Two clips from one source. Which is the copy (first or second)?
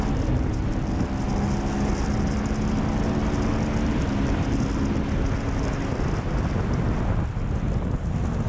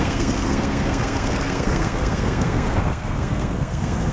second